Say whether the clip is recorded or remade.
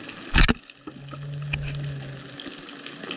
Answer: recorded